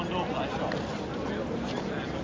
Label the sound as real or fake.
real